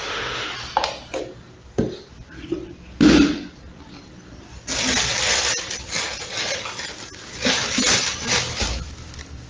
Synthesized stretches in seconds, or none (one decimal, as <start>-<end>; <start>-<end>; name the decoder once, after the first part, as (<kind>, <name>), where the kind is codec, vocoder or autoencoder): 0.0-0.5 (autoencoder, DAC-VAE)